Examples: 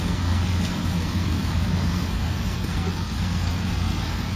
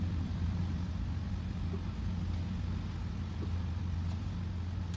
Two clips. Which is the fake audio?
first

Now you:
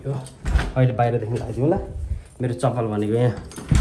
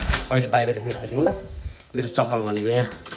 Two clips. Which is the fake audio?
second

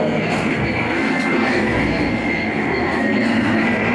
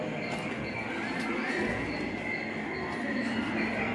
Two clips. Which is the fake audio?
first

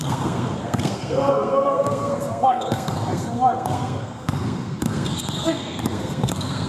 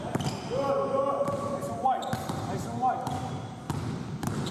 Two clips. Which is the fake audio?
first